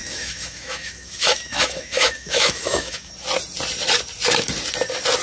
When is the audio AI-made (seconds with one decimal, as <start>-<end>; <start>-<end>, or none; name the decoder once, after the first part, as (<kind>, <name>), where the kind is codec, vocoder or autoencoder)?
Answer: 0.0-3.1 (autoencoder, DAC-VAE)